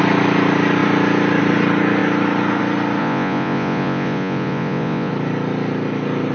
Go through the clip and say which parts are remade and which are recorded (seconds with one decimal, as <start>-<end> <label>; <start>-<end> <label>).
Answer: 0.0-3.0 recorded; 3.0-5.1 remade; 5.1-6.3 recorded